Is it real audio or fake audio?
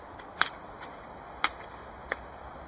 fake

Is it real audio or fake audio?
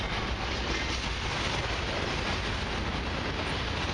real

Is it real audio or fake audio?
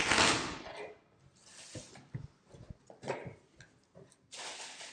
real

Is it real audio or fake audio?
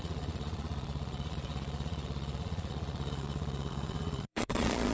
fake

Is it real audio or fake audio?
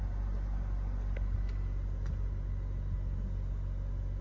real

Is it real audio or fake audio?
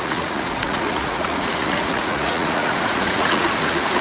fake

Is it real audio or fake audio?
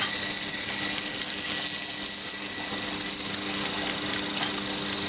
real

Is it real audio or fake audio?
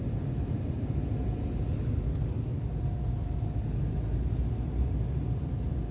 real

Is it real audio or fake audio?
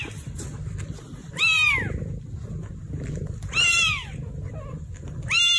fake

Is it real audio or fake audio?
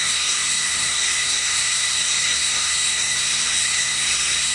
fake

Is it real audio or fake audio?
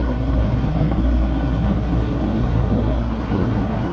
fake